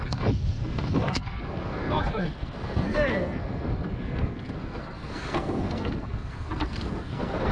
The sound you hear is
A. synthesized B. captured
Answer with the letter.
A